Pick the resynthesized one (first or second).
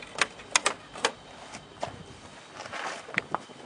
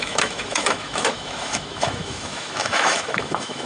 second